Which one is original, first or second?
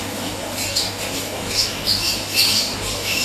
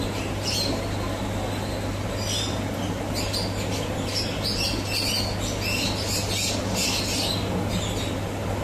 second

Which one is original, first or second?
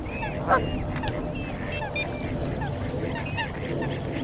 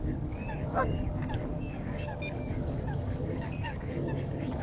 first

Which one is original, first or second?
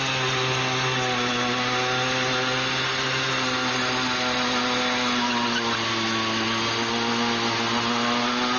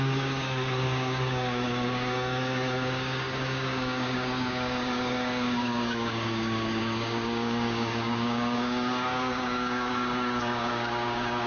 first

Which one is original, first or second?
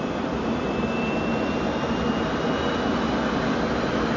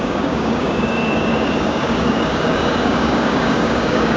first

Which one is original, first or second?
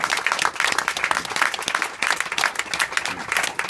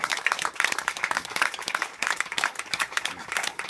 first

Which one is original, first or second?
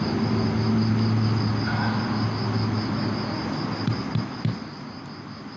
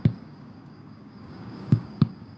first